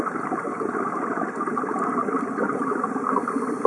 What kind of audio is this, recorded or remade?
recorded